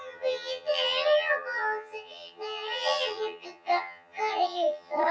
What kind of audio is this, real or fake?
fake